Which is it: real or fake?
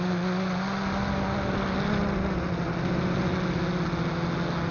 real